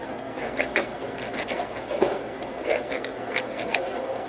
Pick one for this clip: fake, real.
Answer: fake